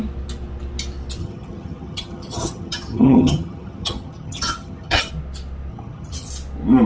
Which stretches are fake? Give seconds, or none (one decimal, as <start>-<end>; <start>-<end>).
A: 1.2-5.1; 5.7-6.3